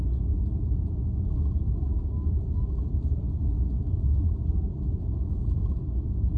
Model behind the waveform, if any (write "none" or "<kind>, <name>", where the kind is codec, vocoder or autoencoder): none